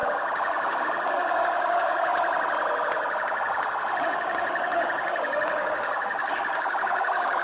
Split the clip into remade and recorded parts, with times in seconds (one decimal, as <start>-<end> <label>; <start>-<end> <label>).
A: 0.0-2.1 remade; 2.1-4.0 recorded; 4.0-7.4 remade